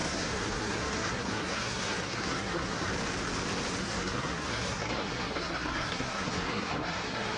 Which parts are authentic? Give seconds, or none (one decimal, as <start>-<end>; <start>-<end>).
2.9-3.8